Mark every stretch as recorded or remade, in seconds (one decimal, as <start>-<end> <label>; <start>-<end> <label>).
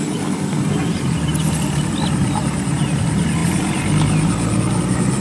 0.0-5.2 recorded